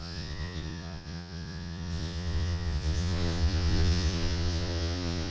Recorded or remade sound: remade